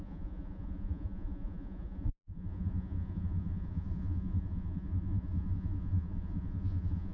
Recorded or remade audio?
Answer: remade